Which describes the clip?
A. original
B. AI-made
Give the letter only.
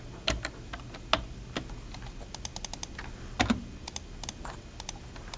A